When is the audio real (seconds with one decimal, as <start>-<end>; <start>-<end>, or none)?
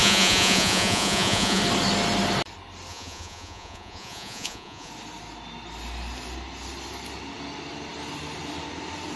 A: 1.6-2.9; 4.9-9.2